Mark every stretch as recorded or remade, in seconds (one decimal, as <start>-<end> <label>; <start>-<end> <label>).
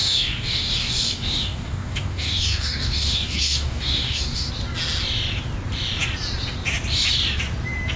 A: 0.0-4.5 remade; 4.5-8.0 recorded